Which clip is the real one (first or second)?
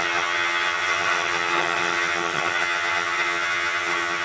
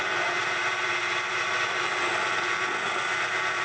second